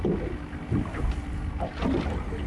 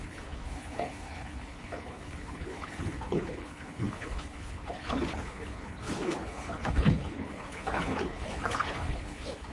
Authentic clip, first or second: first